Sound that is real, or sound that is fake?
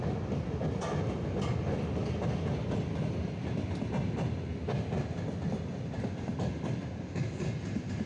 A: real